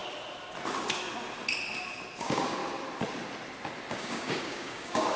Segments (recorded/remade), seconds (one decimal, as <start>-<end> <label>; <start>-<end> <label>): 0.0-2.2 recorded; 2.2-2.6 remade; 2.6-3.9 recorded; 3.9-5.2 remade